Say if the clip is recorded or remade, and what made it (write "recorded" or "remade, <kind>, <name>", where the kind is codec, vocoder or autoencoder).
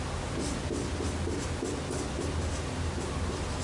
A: recorded